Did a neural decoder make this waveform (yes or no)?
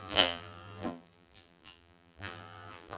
yes